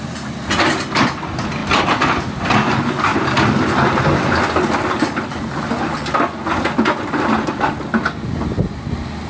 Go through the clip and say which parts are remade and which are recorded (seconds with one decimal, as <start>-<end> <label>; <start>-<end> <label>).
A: 0.0-9.3 recorded